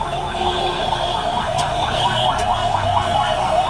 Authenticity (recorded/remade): remade